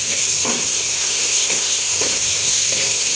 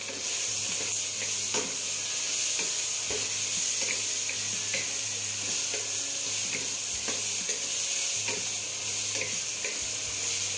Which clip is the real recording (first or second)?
second